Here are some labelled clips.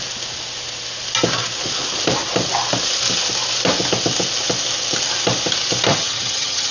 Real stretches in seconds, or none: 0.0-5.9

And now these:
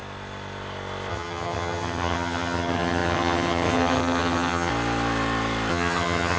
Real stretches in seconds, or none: 0.0-1.1; 4.7-5.7

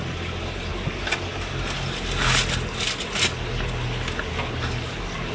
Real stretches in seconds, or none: 0.0-5.3

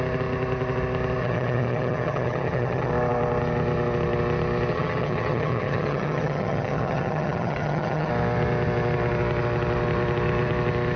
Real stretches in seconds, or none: 0.0-1.2; 2.9-4.7; 8.1-11.0